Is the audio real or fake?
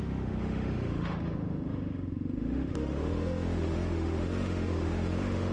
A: fake